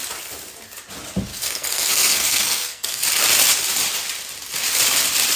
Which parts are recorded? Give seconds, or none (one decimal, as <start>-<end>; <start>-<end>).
0.0-1.3; 3.0-5.4